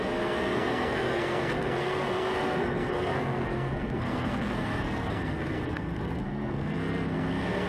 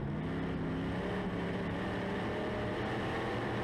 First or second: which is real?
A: second